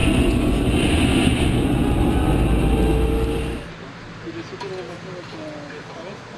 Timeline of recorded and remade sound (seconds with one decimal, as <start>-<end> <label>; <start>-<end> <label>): 0.0-2.3 remade; 2.3-6.4 recorded